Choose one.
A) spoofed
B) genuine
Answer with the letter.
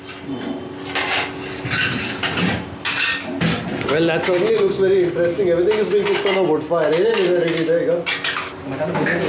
B